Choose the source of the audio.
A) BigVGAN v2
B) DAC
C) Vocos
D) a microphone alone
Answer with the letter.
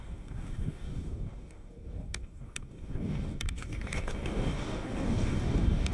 B